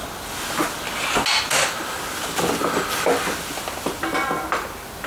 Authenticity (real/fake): real